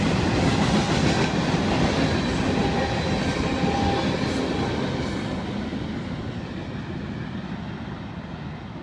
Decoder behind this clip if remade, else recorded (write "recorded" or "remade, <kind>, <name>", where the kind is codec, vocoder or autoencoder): recorded